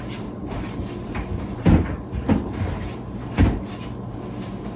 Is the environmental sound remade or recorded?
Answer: remade